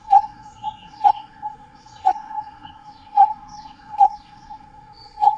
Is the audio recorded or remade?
remade